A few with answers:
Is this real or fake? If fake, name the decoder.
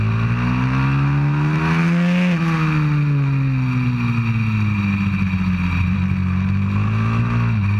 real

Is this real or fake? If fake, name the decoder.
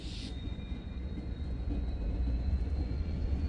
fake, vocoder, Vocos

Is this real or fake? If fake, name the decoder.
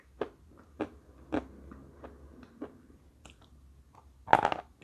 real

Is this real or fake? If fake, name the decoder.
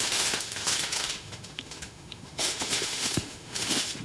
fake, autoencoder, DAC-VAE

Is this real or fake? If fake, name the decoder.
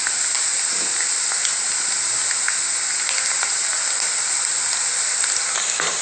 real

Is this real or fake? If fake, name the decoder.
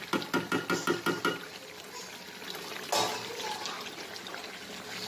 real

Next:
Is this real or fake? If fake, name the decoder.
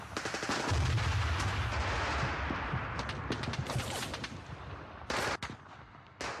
real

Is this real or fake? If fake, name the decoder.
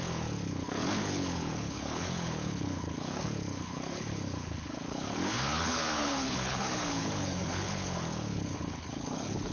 fake, codec, HILCodec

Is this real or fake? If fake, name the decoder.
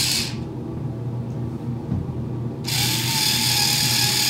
real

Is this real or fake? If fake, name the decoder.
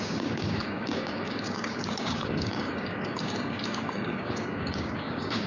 fake, codec, DAC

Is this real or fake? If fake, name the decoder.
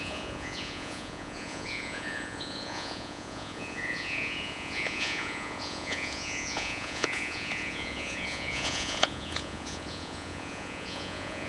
fake, vocoder, Vocos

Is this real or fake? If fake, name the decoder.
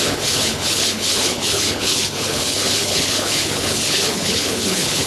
fake, codec, HILCodec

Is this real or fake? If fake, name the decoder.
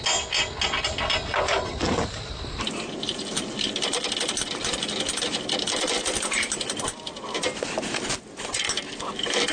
real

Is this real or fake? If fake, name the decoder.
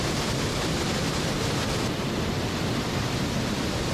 fake, vocoder, BigVGAN v2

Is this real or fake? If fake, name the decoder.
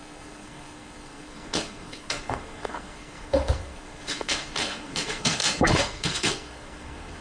fake, codec, SNAC